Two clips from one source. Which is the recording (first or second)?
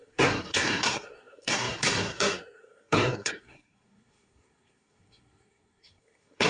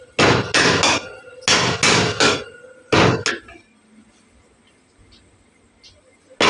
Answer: second